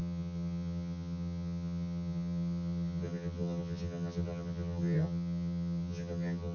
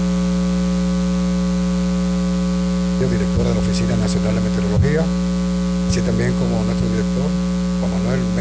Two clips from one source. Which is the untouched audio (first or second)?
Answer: second